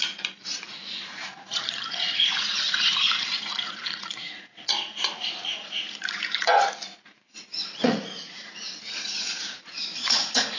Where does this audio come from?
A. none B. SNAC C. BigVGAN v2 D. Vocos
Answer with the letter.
D